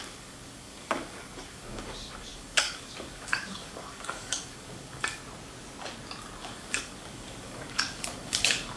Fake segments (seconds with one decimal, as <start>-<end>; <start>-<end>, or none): 0.0-5.2; 6.4-8.8